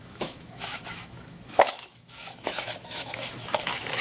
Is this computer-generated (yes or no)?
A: yes